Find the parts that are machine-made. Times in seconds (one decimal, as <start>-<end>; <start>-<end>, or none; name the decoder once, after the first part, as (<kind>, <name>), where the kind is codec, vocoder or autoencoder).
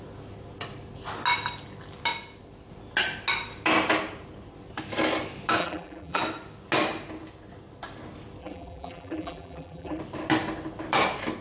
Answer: 5.6-6.2 (vocoder, BigVGAN v2); 8.4-10.0